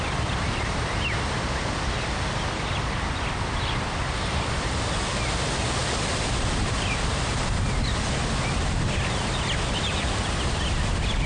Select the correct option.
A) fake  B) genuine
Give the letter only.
B